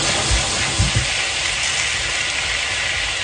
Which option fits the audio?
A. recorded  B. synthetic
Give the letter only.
A